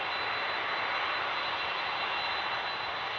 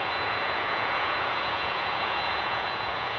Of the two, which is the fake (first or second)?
second